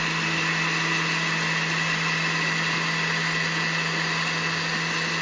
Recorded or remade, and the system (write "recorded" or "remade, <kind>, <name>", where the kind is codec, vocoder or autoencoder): recorded